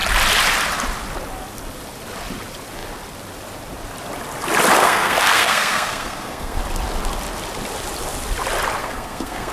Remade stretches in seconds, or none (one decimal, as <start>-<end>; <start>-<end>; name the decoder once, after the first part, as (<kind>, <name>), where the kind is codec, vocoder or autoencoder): 4.8-6.6 (codec, SNAC); 8.8-9.5